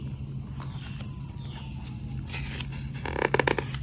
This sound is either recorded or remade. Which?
recorded